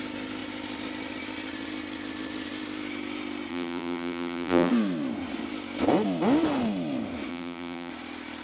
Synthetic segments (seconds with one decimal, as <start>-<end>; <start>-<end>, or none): 3.5-4.7; 7.3-7.9